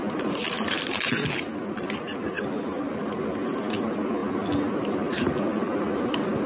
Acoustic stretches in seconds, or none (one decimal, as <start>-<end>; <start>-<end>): 0.0-6.5